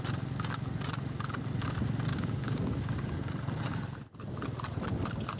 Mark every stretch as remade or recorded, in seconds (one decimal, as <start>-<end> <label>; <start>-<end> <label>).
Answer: 0.0-2.1 recorded; 2.1-3.1 remade; 3.1-5.4 recorded

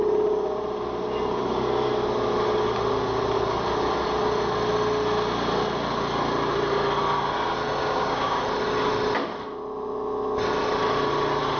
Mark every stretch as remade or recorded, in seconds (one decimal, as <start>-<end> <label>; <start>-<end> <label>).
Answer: 0.0-7.8 recorded; 7.8-8.4 remade; 8.4-11.6 recorded

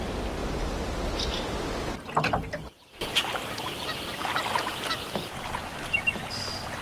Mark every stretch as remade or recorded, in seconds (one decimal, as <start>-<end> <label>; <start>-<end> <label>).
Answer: 0.0-6.8 recorded

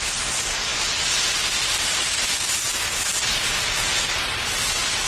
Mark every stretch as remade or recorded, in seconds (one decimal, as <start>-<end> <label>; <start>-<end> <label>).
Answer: 0.0-5.1 recorded

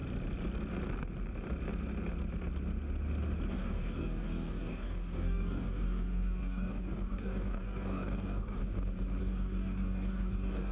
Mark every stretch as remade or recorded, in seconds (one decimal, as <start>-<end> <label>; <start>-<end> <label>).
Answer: 0.0-3.5 recorded; 3.5-8.6 remade; 8.6-9.2 recorded; 9.2-10.7 remade